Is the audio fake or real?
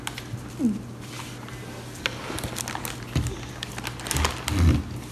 real